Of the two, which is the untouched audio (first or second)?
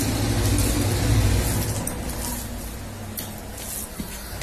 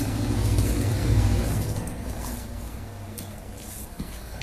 first